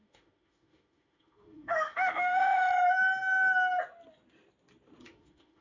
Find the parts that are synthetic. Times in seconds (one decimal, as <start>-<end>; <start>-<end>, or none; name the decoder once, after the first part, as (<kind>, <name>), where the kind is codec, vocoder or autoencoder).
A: 0.0-2.7 (autoencoder, DAC-VAE); 5.0-5.6